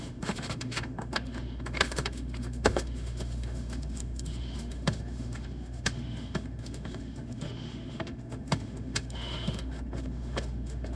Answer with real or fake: fake